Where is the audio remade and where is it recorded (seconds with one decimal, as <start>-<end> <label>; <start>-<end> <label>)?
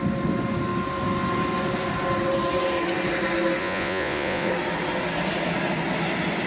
0.0-3.6 recorded; 3.6-4.5 remade; 4.5-6.5 recorded